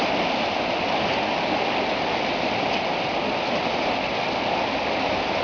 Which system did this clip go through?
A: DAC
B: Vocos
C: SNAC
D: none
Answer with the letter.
D